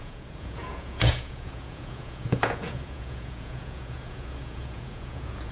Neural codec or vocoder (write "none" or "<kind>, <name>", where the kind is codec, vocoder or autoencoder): vocoder, Vocos